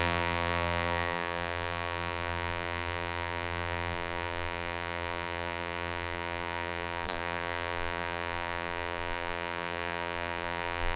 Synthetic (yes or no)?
yes